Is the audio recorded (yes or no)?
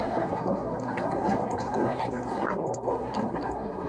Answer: no